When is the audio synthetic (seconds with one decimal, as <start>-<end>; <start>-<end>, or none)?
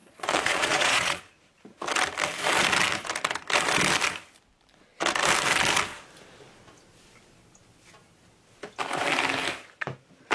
0.0-1.2